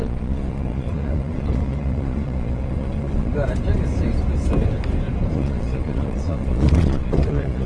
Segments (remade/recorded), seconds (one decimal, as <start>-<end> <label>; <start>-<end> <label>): 0.0-3.3 remade; 3.3-5.3 recorded; 5.3-7.7 remade